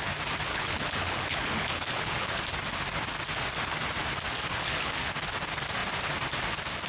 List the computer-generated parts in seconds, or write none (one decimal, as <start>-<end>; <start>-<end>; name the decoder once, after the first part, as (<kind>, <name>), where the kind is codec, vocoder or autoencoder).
0.5-2.4 (codec, HILCodec); 4.5-5.1